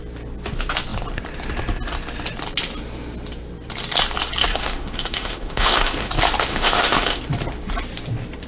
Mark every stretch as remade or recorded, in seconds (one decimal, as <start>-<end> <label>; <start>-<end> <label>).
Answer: 0.0-4.5 recorded; 4.5-6.1 remade; 6.1-6.5 recorded; 6.5-7.2 remade; 7.2-8.5 recorded

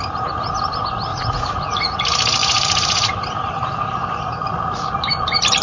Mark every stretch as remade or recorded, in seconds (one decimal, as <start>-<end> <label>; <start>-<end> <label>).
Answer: 0.0-1.1 recorded; 1.1-2.0 remade; 2.0-2.4 recorded; 2.4-3.1 remade; 3.1-5.6 recorded

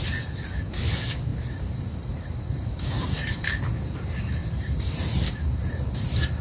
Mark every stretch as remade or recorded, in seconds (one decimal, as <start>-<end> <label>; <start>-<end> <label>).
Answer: 0.0-1.3 recorded; 1.3-3.5 remade; 3.5-4.4 recorded; 4.4-5.2 remade; 5.2-6.4 recorded

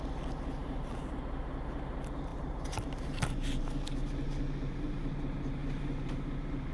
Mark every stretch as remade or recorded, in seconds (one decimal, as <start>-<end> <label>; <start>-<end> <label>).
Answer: 0.0-0.6 recorded; 0.6-1.2 remade; 1.2-2.3 recorded; 2.3-5.1 remade; 5.1-5.6 recorded; 5.6-6.7 remade

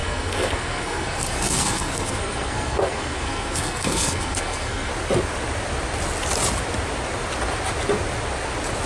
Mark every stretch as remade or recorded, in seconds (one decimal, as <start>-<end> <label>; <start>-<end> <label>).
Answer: 0.0-4.9 remade; 4.9-8.9 recorded

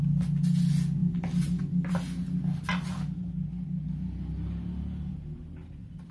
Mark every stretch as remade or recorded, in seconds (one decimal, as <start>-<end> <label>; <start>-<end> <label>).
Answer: 0.0-6.1 recorded

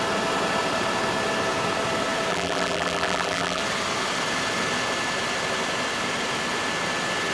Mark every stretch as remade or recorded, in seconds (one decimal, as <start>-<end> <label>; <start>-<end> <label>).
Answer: 0.0-2.3 recorded; 2.3-3.6 remade; 3.6-7.3 recorded

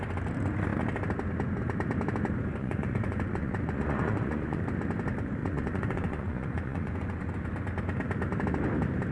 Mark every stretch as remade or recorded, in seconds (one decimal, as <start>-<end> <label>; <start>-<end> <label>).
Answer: 0.0-2.6 recorded; 2.6-4.6 remade; 4.6-5.4 recorded; 5.4-7.3 remade; 7.3-9.1 recorded